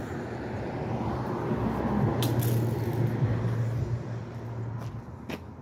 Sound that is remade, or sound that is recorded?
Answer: recorded